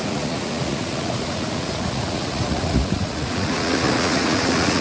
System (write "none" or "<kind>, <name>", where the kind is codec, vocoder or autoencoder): vocoder, Vocos